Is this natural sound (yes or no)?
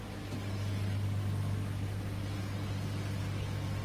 yes